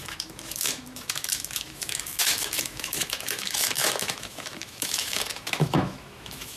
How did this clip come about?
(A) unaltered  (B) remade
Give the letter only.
B